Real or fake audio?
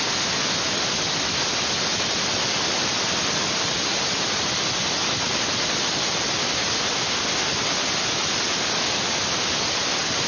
real